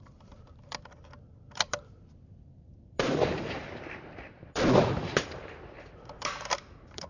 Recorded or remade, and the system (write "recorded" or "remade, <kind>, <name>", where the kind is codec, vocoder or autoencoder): remade, vocoder, BigVGAN v2